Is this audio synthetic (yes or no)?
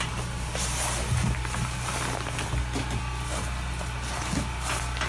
no